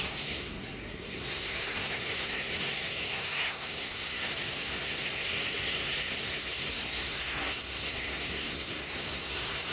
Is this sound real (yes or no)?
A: no